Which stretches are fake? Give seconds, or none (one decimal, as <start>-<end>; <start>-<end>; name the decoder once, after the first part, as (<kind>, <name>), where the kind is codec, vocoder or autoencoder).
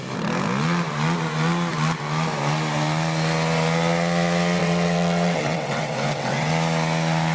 4.6-6.5 (vocoder, WaveNeXt)